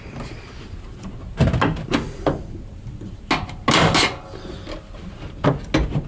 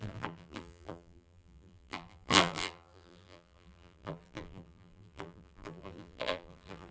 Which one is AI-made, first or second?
second